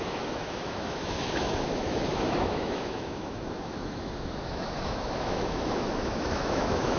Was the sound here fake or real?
fake